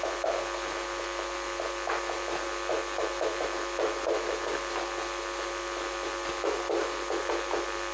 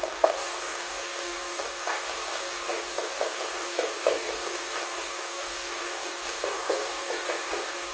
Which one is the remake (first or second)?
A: second